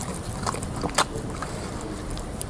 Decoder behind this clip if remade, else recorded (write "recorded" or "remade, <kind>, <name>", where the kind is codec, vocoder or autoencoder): remade, vocoder, BigVGAN v2